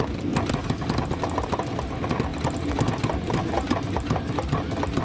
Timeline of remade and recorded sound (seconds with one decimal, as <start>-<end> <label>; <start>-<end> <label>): 0.0-5.0 recorded